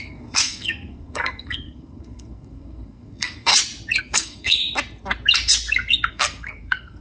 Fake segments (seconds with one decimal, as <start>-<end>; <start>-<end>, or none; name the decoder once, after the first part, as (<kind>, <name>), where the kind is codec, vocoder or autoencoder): 0.0-3.5 (codec, SNAC); 4.0-4.6; 6.1-7.0